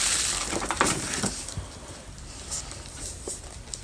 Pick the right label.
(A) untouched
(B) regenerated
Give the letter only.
A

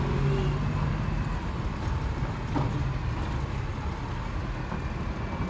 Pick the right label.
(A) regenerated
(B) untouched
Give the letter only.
B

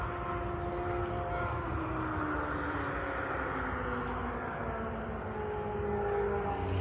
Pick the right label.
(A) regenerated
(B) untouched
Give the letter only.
B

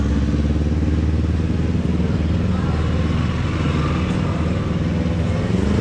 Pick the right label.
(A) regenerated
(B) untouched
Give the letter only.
B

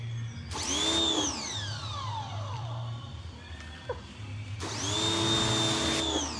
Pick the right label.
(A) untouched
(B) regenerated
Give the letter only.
A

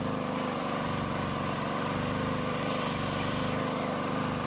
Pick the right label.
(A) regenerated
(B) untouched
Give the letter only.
A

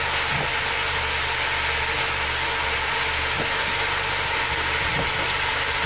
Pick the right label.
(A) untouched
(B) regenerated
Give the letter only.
A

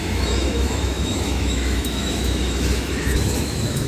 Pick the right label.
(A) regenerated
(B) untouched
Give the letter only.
A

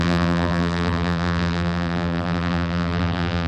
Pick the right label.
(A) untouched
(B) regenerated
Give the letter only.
B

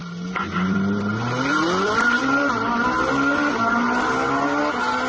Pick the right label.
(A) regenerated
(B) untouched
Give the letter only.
B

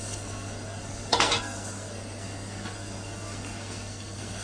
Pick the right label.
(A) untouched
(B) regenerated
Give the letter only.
B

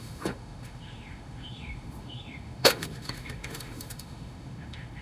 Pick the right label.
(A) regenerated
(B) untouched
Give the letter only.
A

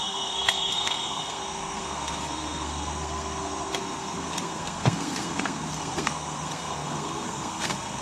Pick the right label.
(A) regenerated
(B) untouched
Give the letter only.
A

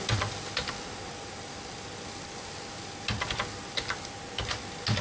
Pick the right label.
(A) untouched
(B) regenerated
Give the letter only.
A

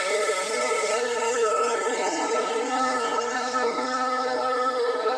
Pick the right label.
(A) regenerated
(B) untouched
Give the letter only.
A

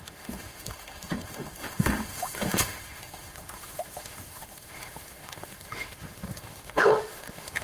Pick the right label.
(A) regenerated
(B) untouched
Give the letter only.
A